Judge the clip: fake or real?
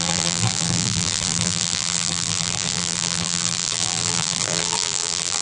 fake